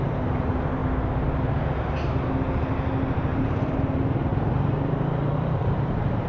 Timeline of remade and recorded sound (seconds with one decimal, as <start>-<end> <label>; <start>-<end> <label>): 0.0-3.3 recorded; 3.3-3.8 remade; 3.8-4.3 recorded; 4.3-6.3 remade